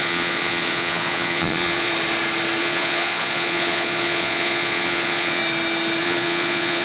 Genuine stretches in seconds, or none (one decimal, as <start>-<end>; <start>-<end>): 1.9-2.6; 5.4-6.0